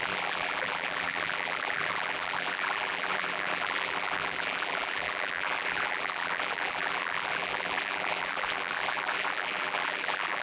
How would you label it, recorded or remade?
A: remade